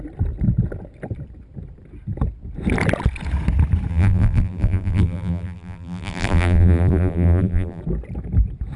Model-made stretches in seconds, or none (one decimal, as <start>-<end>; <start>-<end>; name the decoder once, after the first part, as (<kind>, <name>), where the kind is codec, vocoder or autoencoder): 3.9-7.8 (vocoder, BigVGAN v2)